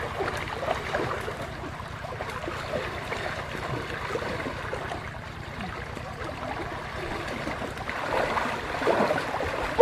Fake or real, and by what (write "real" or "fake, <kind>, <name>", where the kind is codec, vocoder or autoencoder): real